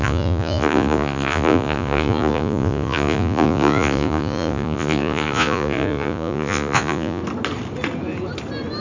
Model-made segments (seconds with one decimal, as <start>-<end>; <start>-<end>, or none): 0.0-7.2